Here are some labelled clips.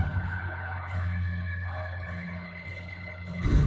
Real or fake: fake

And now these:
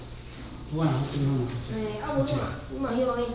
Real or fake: real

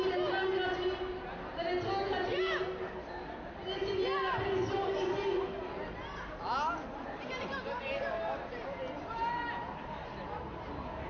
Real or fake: real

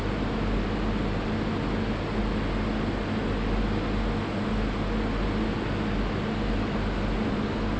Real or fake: real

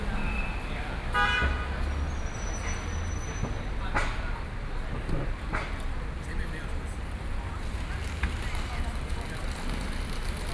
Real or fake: real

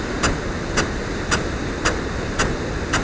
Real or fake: real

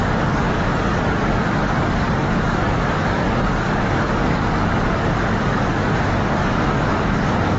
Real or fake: fake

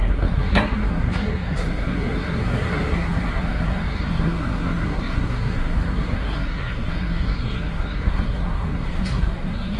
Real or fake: fake